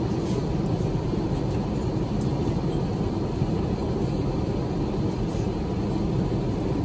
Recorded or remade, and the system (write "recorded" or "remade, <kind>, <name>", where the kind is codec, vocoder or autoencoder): recorded